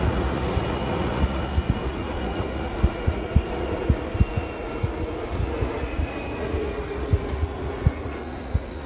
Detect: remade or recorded remade